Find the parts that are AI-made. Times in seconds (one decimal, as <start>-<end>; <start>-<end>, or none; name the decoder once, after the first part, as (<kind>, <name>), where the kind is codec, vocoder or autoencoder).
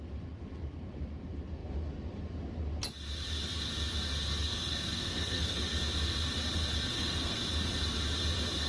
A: 4.4-5.6 (codec, SNAC); 6.9-7.4